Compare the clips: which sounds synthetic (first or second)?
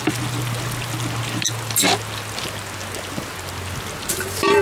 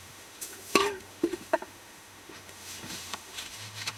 second